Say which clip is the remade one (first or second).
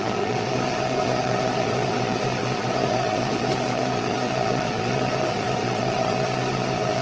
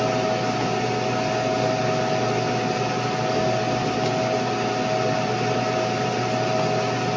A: first